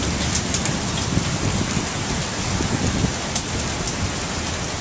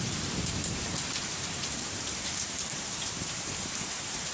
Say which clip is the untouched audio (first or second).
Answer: first